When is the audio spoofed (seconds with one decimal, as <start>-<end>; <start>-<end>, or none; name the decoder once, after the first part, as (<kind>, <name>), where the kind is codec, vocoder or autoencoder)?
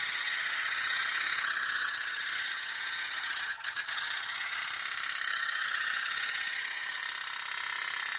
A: 0.0-4.6 (vocoder, HiFi-GAN); 5.3-7.0